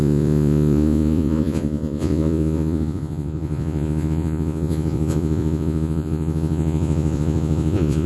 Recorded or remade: remade